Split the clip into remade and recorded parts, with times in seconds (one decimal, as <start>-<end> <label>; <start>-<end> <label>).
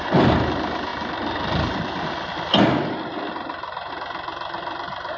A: 0.0-5.2 recorded